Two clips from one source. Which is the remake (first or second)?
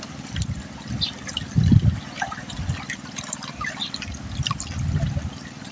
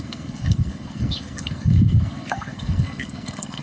second